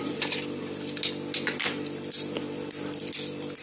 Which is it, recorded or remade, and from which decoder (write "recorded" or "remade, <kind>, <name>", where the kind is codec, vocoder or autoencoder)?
recorded